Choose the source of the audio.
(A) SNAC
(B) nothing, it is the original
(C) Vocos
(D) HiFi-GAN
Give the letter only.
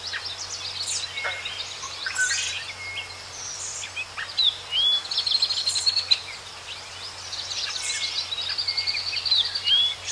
B